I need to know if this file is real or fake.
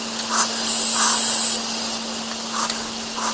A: real